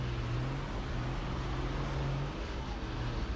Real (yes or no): yes